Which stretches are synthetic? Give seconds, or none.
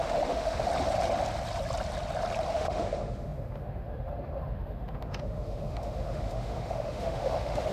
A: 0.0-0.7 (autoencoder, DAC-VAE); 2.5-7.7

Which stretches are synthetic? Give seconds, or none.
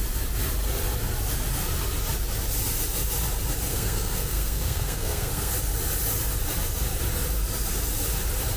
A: 3.7-5.5 (codec, SNAC)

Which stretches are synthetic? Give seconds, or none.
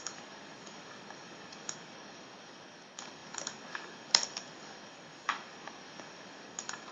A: 0.0-6.9 (codec, DAC)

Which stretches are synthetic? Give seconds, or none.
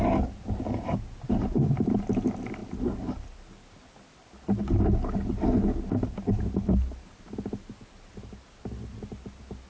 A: none